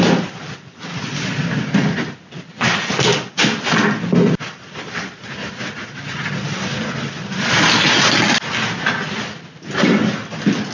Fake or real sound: real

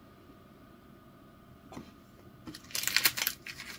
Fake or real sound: real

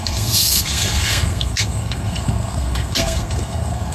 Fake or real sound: fake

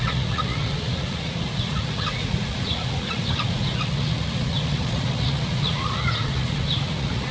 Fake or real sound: fake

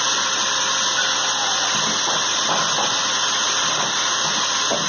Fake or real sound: real